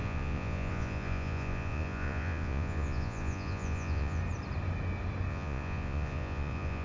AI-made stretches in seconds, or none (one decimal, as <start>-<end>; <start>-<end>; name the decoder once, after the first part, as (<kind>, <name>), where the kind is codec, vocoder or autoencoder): 0.0-4.2 (vocoder, Vocos); 5.3-6.8